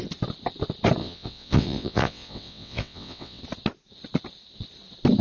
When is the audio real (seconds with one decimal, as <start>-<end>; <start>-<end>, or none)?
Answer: 0.0-1.0; 3.4-5.2